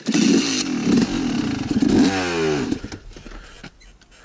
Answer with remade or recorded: recorded